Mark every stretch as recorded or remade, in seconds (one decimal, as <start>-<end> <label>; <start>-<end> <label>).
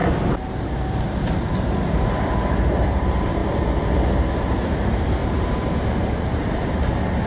0.0-0.5 recorded; 0.5-3.4 remade; 3.4-4.3 recorded; 4.3-7.3 remade